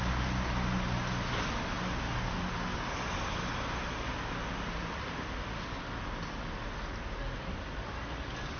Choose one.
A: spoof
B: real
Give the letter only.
B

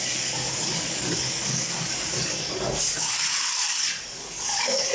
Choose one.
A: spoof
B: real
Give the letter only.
A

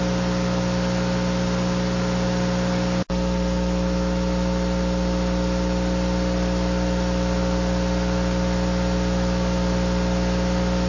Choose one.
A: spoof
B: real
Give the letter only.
B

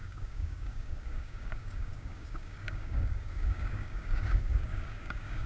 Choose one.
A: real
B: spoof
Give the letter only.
B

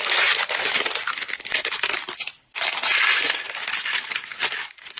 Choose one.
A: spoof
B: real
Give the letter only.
B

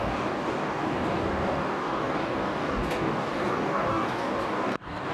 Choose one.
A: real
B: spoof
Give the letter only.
B